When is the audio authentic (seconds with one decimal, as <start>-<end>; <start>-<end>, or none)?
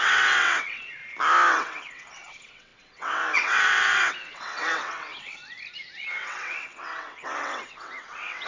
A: 1.0-1.5; 5.4-6.1